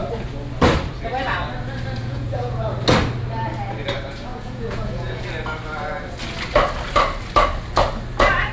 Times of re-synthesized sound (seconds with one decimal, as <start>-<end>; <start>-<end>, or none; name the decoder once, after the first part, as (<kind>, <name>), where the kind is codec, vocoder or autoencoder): 2.0-2.6 (vocoder, Vocos); 4.3-5.2